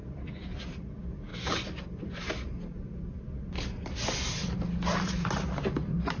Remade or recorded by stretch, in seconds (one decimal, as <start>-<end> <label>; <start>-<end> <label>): 0.0-0.6 remade; 0.6-6.2 recorded